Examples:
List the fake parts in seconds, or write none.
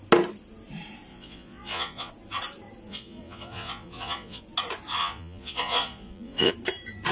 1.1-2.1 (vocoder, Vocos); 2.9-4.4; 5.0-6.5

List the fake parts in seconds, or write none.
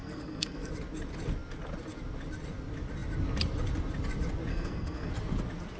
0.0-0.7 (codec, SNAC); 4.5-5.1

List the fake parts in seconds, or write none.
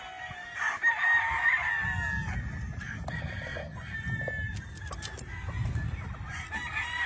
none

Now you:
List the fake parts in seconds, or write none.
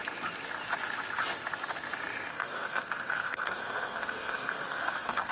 2.3-5.3 (codec, SNAC)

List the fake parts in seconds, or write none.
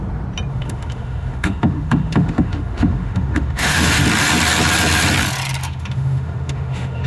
0.5-4.0 (autoencoder, DAC-VAE); 5.6-7.1